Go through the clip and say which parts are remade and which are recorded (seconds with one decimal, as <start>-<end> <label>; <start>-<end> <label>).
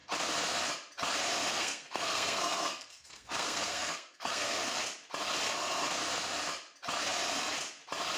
0.0-1.5 recorded; 1.5-4.8 remade; 4.8-8.2 recorded